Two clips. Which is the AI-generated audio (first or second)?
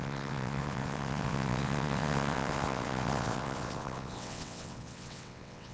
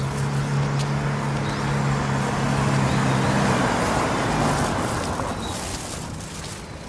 first